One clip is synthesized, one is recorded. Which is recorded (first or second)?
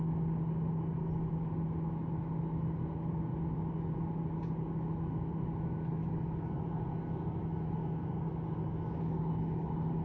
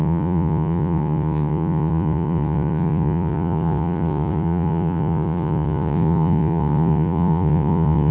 first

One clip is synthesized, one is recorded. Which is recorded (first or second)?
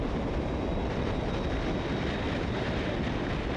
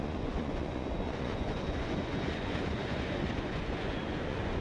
first